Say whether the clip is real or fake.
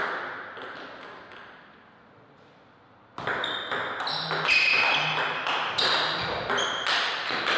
real